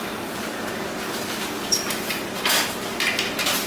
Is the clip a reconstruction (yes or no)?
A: no